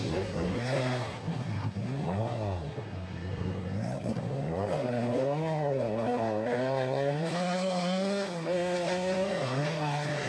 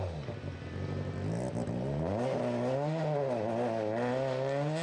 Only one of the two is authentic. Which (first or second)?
second